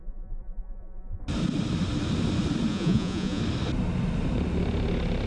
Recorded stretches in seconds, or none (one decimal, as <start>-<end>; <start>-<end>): 1.2-2.7; 3.4-5.3